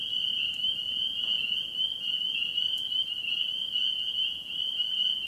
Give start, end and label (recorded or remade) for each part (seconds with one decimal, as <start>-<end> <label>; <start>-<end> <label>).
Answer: 0.0-0.8 recorded; 0.8-1.6 remade; 1.6-3.8 recorded; 3.8-4.5 remade; 4.5-5.3 recorded